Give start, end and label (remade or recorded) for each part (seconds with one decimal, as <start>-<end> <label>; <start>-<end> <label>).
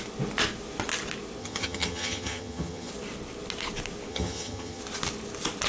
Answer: 0.0-1.4 recorded; 1.4-2.9 remade; 2.9-4.1 recorded; 4.1-4.8 remade; 4.8-5.7 recorded